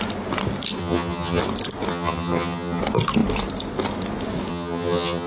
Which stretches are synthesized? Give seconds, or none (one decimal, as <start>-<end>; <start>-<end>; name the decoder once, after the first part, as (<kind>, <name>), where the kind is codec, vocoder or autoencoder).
0.8-1.4 (vocoder, HiFi-GAN); 1.9-2.8; 4.5-5.3